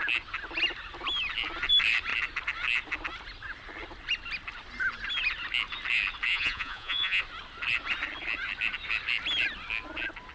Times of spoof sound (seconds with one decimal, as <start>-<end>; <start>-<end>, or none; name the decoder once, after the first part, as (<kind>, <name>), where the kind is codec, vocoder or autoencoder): 6.3-7.2 (vocoder, Vocos)

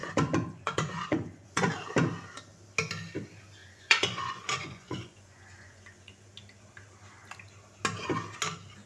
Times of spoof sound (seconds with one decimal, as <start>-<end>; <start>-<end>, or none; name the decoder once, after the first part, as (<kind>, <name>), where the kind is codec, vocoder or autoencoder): 0.0-1.7 (vocoder, Vocos); 3.6-6.2

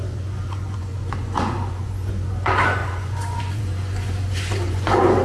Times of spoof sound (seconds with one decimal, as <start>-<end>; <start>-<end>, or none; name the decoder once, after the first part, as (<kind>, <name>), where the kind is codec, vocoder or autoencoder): 0.0-5.2 (vocoder, Vocos)

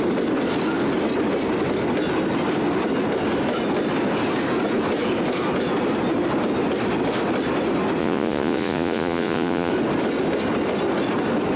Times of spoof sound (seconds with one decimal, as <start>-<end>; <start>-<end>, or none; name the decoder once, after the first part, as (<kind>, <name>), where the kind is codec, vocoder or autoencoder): 8.0-9.7 (vocoder, Vocos)

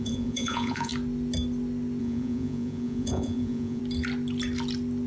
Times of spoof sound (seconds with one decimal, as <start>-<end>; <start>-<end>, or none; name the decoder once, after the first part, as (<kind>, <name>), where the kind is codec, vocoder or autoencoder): 0.0-0.9 (vocoder, Vocos); 2.0-3.8

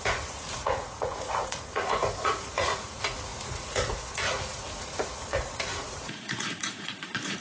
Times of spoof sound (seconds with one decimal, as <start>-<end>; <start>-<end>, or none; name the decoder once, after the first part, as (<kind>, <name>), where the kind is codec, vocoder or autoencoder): 0.0-7.4 (vocoder, Vocos)

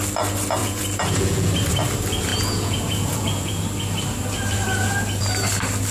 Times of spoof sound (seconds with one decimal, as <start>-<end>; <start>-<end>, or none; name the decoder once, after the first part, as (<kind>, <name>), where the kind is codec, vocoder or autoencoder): 0.6-1.5 (vocoder, Vocos); 2.3-3.5